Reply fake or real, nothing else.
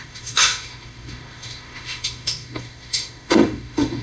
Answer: fake